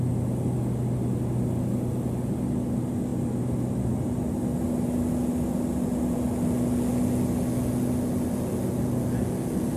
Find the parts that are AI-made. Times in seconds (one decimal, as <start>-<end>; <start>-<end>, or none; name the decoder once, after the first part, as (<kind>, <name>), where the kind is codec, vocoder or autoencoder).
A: none